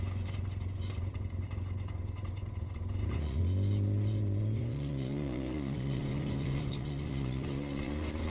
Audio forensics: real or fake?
fake